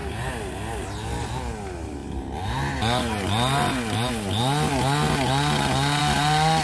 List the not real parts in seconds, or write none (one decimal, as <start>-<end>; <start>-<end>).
none